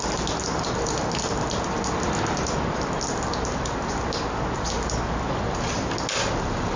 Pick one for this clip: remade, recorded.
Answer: recorded